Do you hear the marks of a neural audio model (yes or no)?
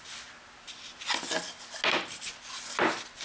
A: no